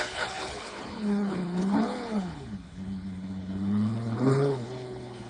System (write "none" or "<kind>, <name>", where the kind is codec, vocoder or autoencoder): codec, HILCodec